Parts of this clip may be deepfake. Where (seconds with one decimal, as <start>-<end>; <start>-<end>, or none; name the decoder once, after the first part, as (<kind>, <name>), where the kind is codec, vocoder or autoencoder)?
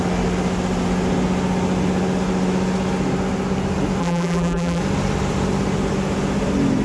4.0-4.8 (vocoder, BigVGAN v2)